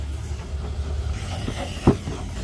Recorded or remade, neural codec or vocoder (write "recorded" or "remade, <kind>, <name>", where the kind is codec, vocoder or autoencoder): recorded